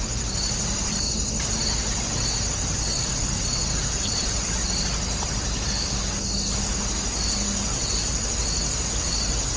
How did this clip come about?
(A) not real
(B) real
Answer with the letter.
B